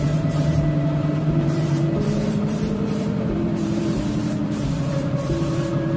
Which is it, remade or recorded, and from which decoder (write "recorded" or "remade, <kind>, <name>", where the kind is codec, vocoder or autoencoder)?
remade, vocoder, BigVGAN v2